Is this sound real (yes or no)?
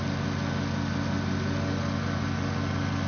yes